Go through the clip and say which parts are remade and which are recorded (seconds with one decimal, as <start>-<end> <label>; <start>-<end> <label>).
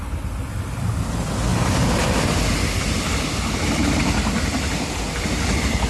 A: 0.0-5.9 recorded